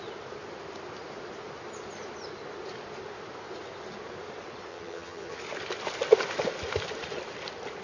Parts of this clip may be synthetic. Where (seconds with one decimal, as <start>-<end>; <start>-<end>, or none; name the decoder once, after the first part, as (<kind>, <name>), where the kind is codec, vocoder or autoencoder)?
4.7-5.4 (vocoder, HiFi-GAN)